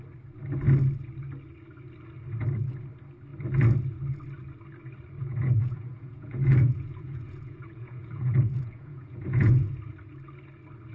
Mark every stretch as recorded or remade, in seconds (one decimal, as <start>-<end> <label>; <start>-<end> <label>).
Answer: 0.0-5.3 recorded; 5.3-9.8 remade; 9.8-10.9 recorded